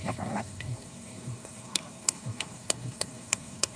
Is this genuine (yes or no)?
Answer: no